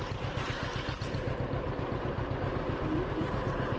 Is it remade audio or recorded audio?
recorded